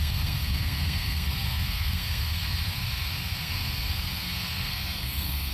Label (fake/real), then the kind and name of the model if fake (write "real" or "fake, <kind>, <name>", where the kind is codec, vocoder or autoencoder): fake, codec, SNAC